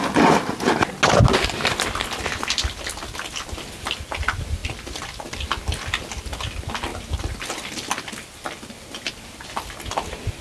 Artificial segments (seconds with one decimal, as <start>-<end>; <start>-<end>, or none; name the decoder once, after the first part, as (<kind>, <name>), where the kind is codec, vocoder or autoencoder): none